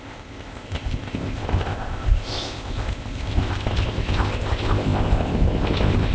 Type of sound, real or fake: fake